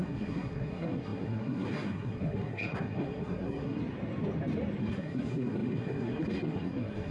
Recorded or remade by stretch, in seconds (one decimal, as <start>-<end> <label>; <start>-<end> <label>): 0.0-3.8 remade; 3.8-4.8 recorded; 4.8-7.1 remade